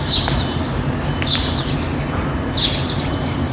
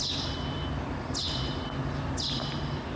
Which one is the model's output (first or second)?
first